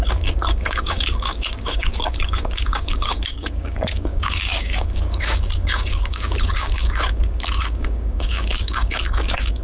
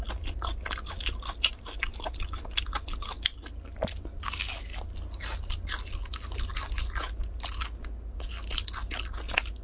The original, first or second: second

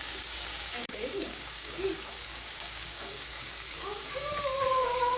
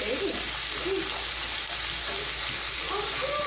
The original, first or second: second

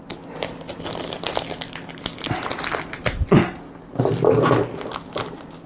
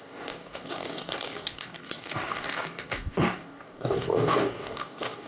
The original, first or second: first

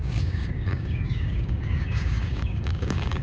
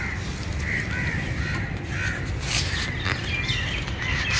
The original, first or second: second